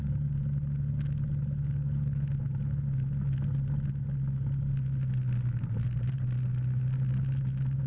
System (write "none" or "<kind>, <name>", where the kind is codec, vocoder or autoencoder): none